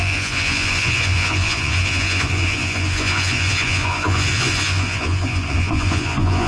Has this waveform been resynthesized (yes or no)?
yes